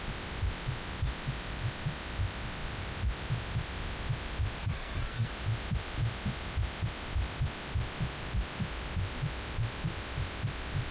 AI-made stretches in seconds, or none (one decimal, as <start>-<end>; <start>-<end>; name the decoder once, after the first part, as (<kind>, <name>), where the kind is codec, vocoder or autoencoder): 4.6-5.3 (codec, SNAC)

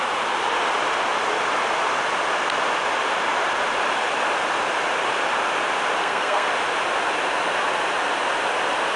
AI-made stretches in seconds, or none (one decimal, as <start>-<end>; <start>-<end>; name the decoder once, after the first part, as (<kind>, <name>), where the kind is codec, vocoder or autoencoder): 6.0-6.5 (codec, SNAC)